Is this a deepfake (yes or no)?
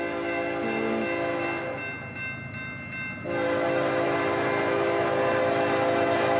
no